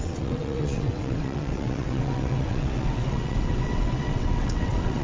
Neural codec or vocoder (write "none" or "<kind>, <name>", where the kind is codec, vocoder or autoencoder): vocoder, WaveNeXt